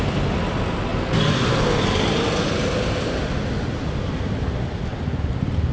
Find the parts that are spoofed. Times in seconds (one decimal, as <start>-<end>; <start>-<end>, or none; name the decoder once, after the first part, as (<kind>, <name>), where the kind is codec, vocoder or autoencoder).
none